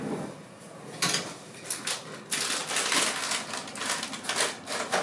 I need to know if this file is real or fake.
real